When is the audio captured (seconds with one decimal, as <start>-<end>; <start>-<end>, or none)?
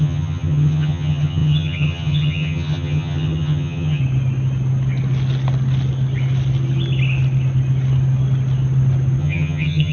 4.0-9.2